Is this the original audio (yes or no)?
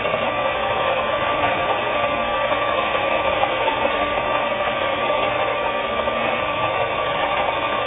no